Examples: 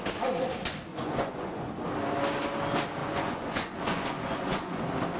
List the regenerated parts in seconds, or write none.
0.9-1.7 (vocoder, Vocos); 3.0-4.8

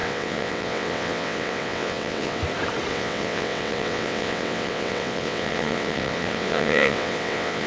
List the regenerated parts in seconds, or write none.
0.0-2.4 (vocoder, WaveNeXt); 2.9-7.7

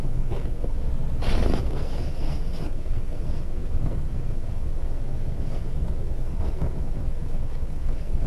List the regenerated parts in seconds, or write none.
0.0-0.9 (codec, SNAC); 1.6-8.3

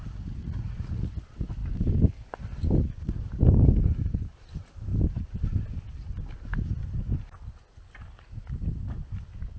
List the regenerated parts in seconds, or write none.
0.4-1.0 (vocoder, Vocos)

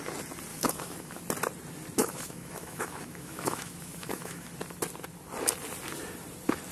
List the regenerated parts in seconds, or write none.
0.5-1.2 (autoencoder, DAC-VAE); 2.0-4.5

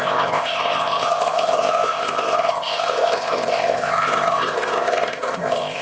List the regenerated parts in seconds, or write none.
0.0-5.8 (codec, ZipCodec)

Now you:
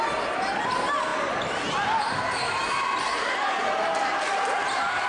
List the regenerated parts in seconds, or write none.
none

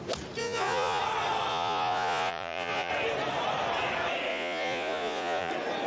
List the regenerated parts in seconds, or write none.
0.4-1.0 (vocoder, Vocos); 1.5-2.9; 4.3-5.5